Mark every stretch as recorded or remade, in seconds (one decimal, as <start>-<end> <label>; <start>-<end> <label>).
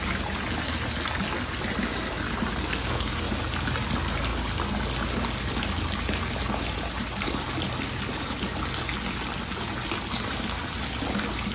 0.0-2.6 recorded; 2.6-3.3 remade; 3.3-11.5 recorded